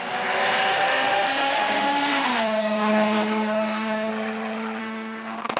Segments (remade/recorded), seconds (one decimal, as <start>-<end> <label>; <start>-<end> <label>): 0.0-0.7 recorded; 0.7-4.1 remade; 4.1-4.8 recorded; 4.8-5.6 remade